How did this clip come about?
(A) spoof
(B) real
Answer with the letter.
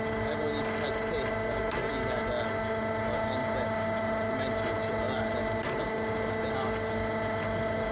B